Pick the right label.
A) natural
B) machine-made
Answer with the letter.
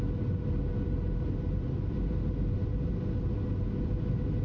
A